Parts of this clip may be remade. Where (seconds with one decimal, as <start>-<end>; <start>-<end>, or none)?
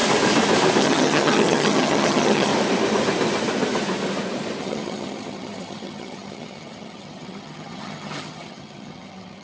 0.8-2.5; 4.6-9.4